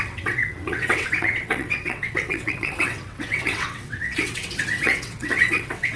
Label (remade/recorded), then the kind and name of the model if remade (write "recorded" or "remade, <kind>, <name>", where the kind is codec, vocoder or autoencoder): remade, vocoder, WaveNeXt